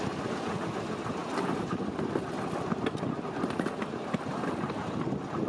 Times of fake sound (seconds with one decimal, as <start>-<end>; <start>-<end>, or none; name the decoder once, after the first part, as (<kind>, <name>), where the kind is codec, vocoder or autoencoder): none